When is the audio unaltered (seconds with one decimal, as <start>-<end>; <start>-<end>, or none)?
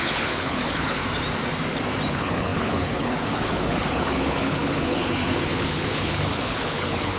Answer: 1.0-2.1